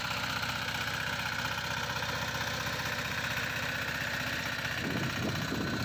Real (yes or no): yes